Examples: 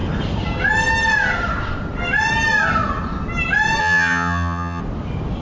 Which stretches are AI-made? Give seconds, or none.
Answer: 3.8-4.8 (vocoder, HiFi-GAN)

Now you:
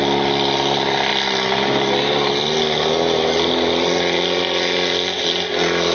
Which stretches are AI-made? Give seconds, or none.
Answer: none

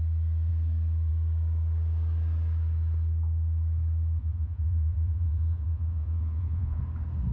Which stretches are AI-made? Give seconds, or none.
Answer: 4.2-6.8 (vocoder, Vocos)

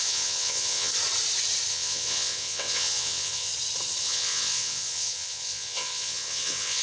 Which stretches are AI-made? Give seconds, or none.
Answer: 0.0-0.9 (vocoder, WaveNeXt); 1.7-3.5; 4.0-6.8

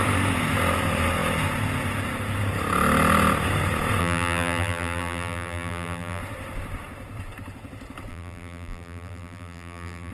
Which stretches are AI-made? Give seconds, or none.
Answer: 4.0-6.2 (vocoder, BigVGAN v2); 8.1-10.1

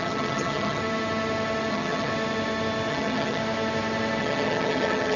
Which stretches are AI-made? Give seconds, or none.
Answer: 0.0-0.8 (vocoder, HiFi-GAN); 1.7-2.1; 2.9-3.4; 4.2-5.2

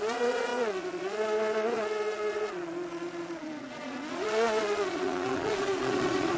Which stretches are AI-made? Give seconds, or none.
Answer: 0.0-6.4 (vocoder, Vocos)

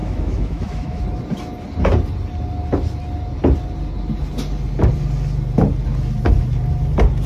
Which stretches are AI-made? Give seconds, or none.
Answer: 0.0-1.0 (autoencoder, DAC-VAE)